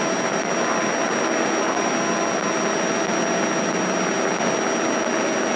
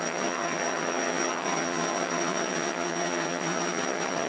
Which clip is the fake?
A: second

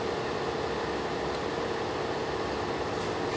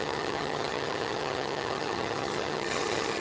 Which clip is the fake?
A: second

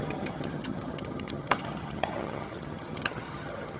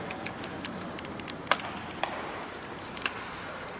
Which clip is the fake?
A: first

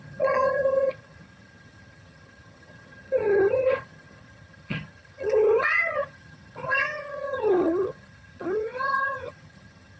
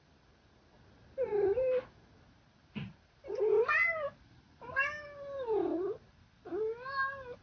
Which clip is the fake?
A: first